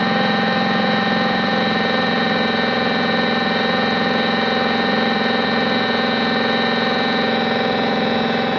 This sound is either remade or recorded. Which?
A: remade